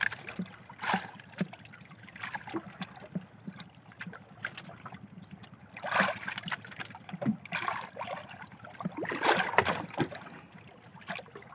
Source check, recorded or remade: recorded